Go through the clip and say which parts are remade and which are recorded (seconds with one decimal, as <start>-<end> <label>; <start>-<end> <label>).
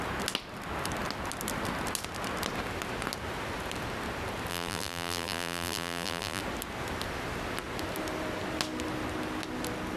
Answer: 0.0-4.5 recorded; 4.5-6.4 remade; 6.4-10.0 recorded